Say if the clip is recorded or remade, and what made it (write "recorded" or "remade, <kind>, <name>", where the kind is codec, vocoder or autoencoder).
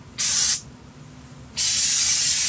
recorded